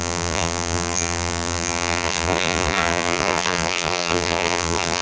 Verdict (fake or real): fake